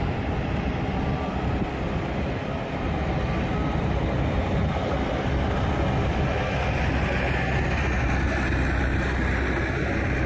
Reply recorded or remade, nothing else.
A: recorded